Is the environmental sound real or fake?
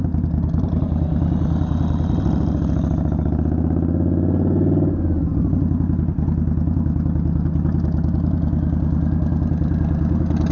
real